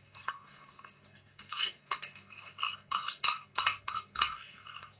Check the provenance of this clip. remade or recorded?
remade